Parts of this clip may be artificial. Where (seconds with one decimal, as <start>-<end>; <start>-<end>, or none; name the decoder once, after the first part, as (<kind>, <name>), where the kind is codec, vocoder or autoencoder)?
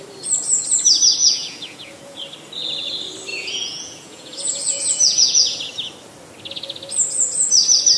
1.2-2.2 (vocoder, Vocos); 3.3-5.6